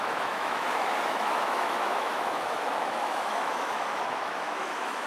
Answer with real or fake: fake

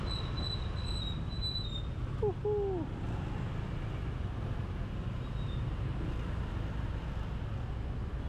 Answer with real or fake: real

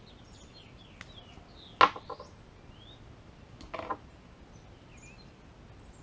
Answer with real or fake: real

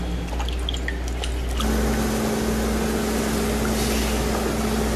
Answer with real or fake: real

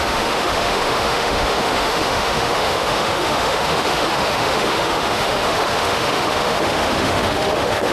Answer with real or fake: fake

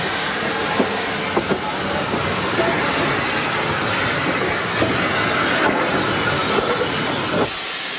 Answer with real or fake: real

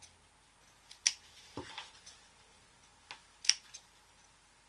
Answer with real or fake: real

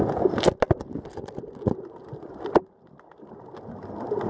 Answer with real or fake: real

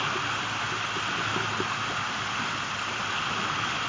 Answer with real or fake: real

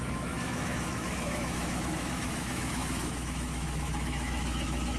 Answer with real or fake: fake